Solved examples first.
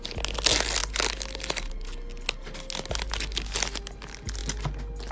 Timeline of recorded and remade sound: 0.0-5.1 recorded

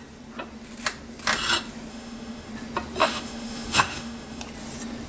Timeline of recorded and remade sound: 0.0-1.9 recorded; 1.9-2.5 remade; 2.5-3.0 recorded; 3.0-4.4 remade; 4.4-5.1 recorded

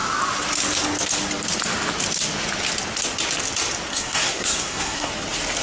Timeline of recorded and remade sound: 0.0-3.9 recorded; 3.9-5.1 remade; 5.1-5.6 recorded

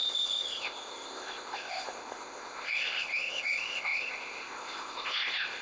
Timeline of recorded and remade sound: 0.0-5.6 remade